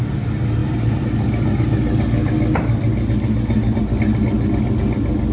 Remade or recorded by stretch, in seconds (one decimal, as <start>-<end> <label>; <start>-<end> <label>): 0.0-5.3 recorded